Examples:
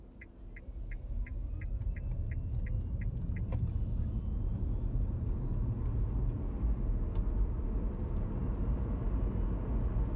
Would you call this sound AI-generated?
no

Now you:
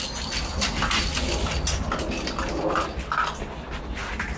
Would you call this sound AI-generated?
no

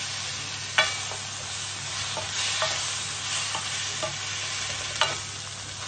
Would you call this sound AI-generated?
no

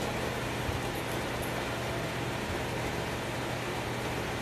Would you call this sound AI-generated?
no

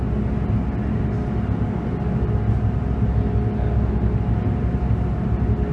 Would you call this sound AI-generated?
no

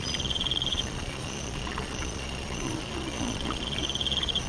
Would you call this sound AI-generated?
yes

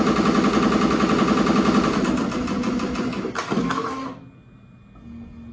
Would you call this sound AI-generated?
no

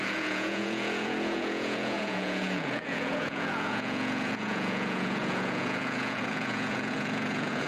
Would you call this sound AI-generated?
yes